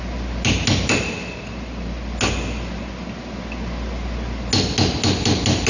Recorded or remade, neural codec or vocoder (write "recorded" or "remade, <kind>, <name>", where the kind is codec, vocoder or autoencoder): recorded